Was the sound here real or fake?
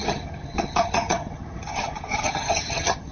fake